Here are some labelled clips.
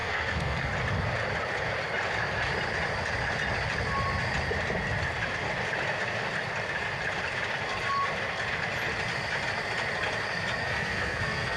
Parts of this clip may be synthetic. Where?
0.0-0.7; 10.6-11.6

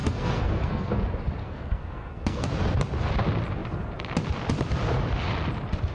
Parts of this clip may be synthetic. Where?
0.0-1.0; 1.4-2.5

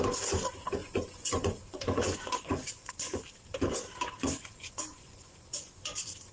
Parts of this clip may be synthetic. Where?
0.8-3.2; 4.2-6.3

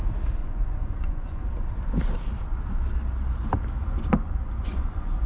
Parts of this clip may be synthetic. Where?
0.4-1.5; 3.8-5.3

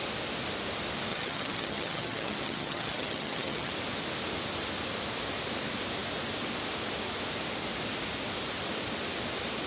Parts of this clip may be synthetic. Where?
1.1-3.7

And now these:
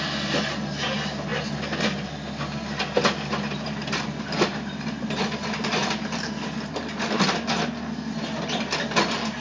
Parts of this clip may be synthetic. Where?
none

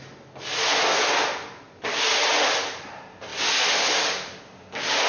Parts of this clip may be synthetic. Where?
none

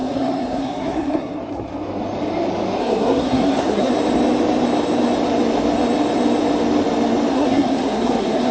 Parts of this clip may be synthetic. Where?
0.0-1.4; 2.8-3.9; 7.3-8.5